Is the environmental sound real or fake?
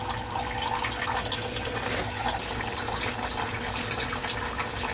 real